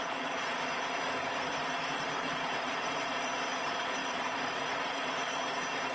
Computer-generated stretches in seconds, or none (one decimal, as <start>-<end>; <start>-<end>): 1.6-3.2; 4.0-5.3

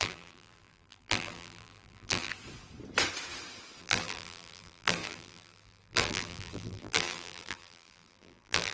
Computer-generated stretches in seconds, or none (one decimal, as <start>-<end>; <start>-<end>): 0.0-2.3; 3.8-8.7

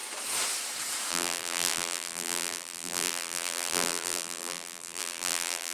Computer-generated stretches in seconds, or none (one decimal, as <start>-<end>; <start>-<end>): 1.1-5.7

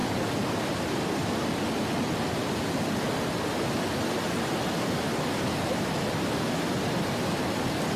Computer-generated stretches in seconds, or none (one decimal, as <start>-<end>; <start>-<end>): none

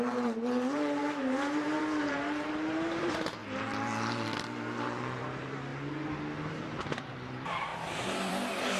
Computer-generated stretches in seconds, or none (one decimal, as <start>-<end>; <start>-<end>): 0.0-3.4; 5.2-5.7; 6.5-8.8

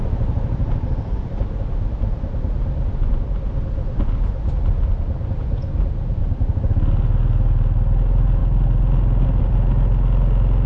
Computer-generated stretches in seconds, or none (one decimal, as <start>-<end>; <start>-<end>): none

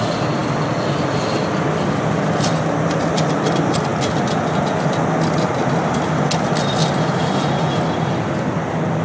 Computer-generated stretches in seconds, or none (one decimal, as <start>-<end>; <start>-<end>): 0.4-1.8

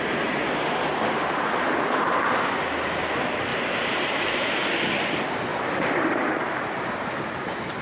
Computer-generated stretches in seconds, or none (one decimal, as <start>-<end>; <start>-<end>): 3.5-4.5; 5.5-6.9